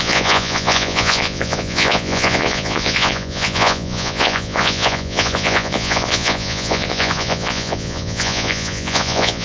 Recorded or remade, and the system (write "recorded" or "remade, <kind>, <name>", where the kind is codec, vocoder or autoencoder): remade, vocoder, Vocos